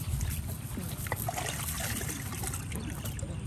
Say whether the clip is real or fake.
real